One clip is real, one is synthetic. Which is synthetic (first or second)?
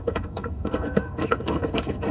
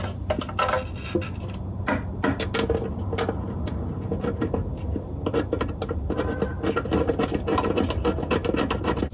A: first